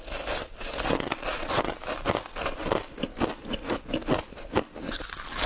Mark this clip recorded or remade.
recorded